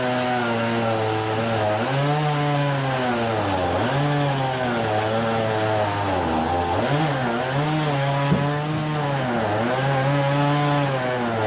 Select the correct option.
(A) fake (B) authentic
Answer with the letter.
B